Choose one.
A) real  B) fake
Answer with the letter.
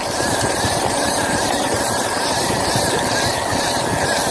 B